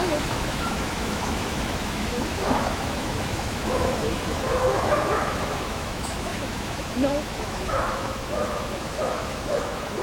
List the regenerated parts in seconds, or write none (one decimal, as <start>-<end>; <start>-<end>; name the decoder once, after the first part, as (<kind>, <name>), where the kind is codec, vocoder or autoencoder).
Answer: 0.0-10.0 (autoencoder, DAC-VAE)